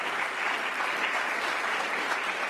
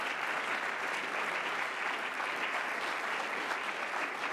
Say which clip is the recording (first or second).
second